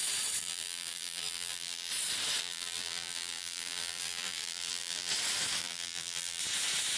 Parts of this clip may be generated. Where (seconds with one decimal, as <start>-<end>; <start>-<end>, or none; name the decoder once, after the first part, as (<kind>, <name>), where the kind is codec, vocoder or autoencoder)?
0.4-1.9 (vocoder, BigVGAN v2); 2.4-5.1; 5.6-6.4